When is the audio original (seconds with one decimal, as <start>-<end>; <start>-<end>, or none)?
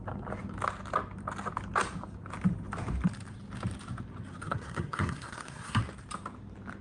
0.0-4.3; 5.8-6.8